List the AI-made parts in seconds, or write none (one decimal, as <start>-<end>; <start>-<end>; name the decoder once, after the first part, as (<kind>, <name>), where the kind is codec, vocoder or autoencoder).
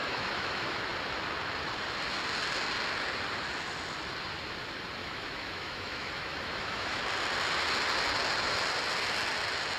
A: 0.0-0.8 (autoencoder, DAC-VAE); 5.0-7.0